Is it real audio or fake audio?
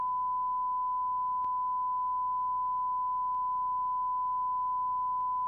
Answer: real